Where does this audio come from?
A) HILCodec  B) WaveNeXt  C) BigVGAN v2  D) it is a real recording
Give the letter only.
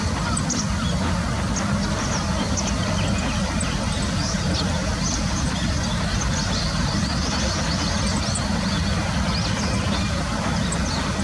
D